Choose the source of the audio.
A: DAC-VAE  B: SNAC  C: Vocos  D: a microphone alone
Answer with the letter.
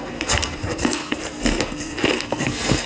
B